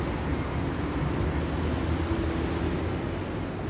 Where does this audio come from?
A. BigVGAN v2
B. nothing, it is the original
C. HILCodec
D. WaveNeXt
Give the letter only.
B